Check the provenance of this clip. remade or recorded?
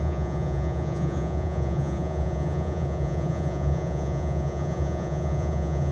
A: remade